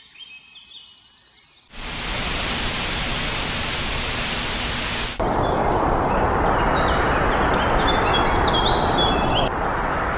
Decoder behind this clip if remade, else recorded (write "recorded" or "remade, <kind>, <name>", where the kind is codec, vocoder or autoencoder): recorded